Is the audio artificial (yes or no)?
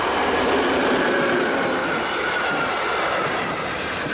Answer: no